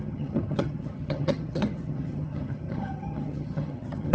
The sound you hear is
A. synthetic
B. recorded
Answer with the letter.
A